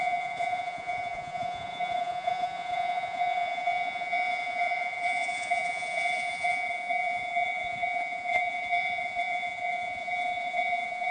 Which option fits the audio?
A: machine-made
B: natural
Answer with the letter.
A